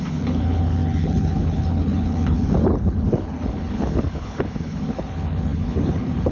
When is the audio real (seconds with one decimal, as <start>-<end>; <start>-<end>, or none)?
none